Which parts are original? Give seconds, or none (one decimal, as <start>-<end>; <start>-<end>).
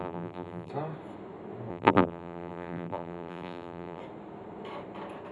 0.7-1.7; 4.0-5.3